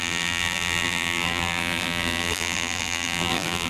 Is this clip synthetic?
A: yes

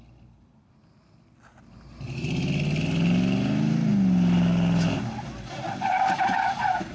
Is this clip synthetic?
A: no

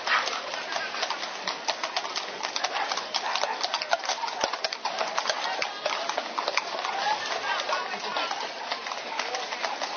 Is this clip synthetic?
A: no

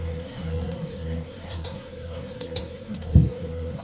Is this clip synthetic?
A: yes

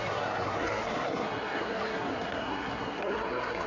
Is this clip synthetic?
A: yes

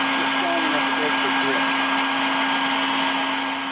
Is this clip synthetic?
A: no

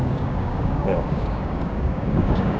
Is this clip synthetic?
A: yes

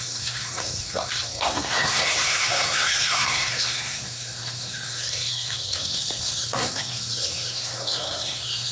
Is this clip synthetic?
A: yes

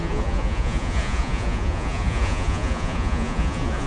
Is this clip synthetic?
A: yes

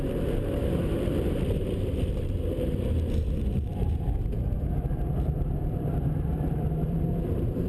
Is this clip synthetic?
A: yes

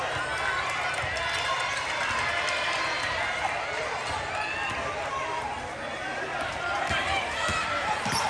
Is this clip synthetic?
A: yes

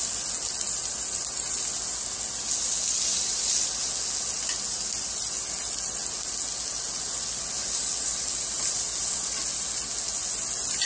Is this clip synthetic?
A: no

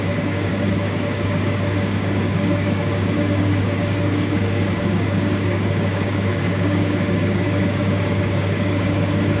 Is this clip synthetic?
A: yes